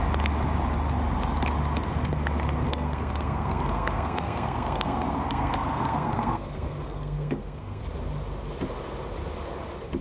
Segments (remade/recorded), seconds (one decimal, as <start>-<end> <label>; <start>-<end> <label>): 0.0-2.7 recorded; 2.7-7.8 remade; 7.8-10.0 recorded